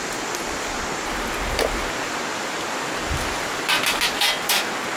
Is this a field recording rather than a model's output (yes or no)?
yes